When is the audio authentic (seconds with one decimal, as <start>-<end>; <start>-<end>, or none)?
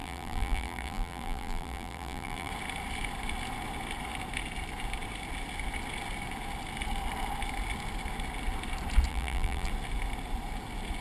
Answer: 2.5-9.1; 9.7-11.0